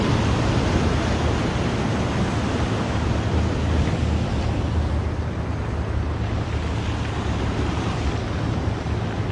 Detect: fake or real real